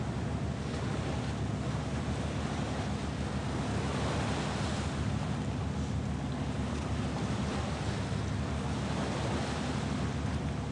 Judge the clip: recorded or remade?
recorded